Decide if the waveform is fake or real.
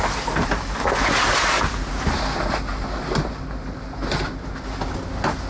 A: real